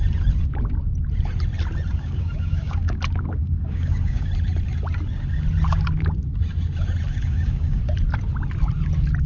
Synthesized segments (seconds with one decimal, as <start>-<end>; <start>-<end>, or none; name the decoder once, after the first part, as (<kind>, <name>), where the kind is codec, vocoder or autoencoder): 1.9-3.0 (codec, DAC); 3.4-4.3; 7.1-7.8